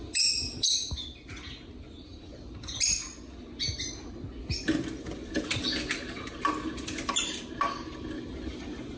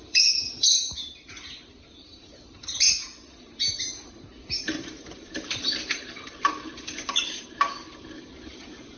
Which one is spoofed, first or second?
second